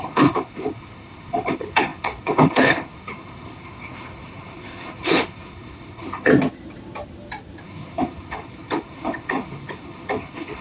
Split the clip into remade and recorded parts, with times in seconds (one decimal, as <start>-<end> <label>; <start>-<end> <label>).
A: 0.0-6.3 remade; 6.3-7.6 recorded; 7.6-10.6 remade